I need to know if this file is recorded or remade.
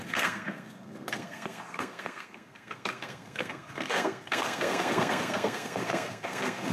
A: remade